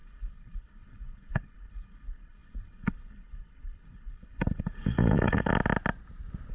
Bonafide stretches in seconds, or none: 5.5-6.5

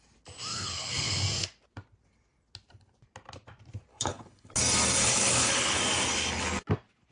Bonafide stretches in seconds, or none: 0.0-0.5; 1.2-3.9; 4.5-5.0; 5.8-7.1

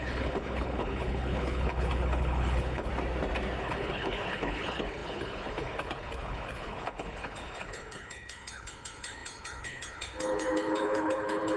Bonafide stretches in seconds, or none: 2.9-3.6

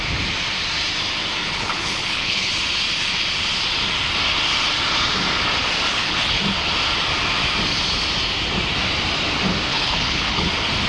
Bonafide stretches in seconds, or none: 0.0-1.4; 2.5-5.9; 6.4-9.7; 10.5-10.9

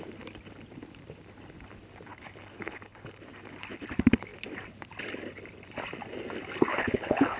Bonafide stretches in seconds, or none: 0.0-2.1; 3.2-6.7

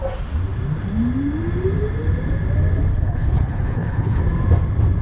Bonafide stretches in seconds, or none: 0.0-2.9; 4.2-5.0